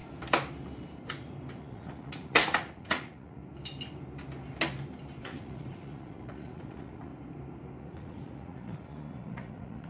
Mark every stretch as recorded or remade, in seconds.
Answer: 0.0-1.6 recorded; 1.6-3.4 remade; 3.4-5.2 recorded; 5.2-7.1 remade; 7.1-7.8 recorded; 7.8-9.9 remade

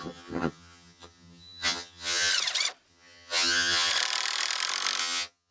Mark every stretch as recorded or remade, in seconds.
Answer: 0.0-2.3 remade; 2.3-2.9 recorded; 2.9-3.9 remade; 3.9-5.0 recorded; 5.0-5.5 remade

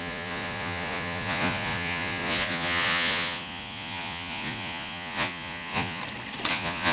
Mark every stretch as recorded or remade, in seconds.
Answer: 0.0-6.0 remade; 6.0-6.5 recorded; 6.5-6.9 remade

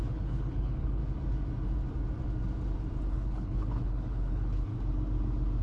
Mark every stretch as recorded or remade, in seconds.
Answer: 0.0-1.0 remade; 1.0-3.1 recorded; 3.1-4.7 remade; 4.7-5.6 recorded

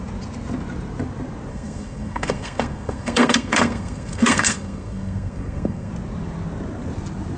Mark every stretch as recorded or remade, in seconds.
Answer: 0.0-1.5 recorded; 1.5-5.9 remade; 5.9-7.4 recorded

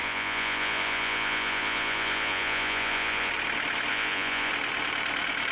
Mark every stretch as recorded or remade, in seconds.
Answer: 0.0-3.3 remade; 3.3-3.9 recorded; 3.9-4.5 remade; 4.5-5.5 recorded

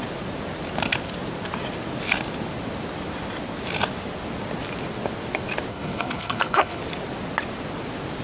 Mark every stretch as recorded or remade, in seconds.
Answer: 0.0-5.7 recorded; 5.7-6.8 remade; 6.8-8.2 recorded